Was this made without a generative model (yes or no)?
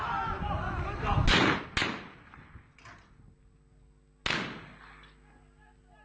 yes